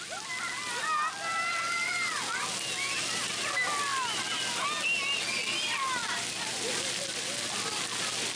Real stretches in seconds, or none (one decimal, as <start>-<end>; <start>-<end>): 0.0-8.4